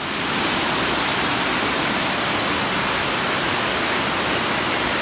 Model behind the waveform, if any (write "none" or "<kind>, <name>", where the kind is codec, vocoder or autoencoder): none